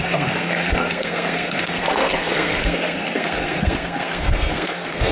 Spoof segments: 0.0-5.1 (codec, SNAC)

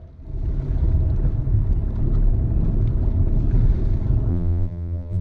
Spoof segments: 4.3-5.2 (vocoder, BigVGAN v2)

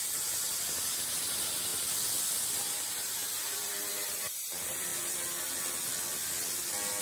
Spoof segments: 0.0-1.7 (vocoder, BigVGAN v2); 2.7-4.9

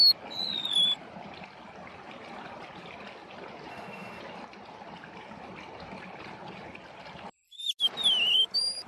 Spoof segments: 3.7-4.2 (autoencoder, DAC-VAE)

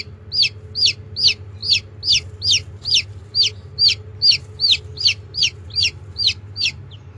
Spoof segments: none

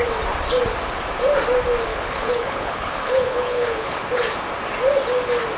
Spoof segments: 1.9-4.0 (codec, HILCodec)